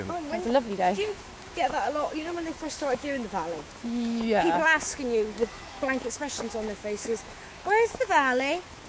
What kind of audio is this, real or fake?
fake